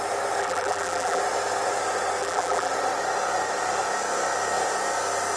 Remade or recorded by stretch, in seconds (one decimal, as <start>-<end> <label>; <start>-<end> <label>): 0.0-0.4 recorded; 0.4-1.2 remade; 1.2-2.2 recorded; 2.2-2.7 remade; 2.7-5.4 recorded

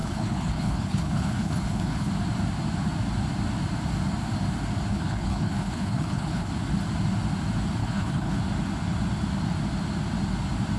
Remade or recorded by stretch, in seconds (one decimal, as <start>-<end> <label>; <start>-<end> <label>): 0.0-2.1 remade; 2.1-4.9 recorded; 4.9-6.5 remade; 6.5-7.8 recorded; 7.8-8.4 remade; 8.4-10.8 recorded

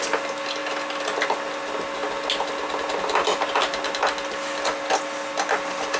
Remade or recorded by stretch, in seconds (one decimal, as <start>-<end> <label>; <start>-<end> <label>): 0.0-6.0 recorded

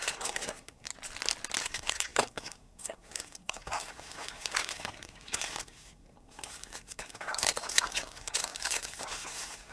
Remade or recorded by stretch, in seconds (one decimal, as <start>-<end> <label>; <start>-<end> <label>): 0.0-0.9 remade; 0.9-1.6 recorded; 1.6-9.7 remade